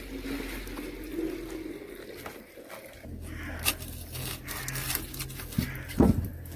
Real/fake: real